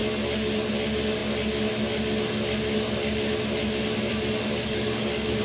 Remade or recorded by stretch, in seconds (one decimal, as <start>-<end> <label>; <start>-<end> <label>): 0.0-4.5 recorded; 4.5-5.4 remade